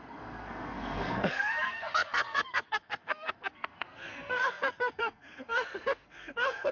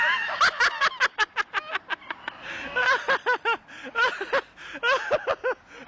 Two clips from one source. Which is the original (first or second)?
second